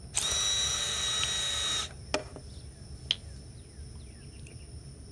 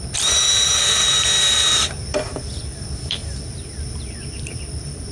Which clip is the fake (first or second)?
second